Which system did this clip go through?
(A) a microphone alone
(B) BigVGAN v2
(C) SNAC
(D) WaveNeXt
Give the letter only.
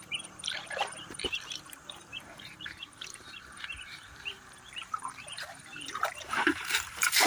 B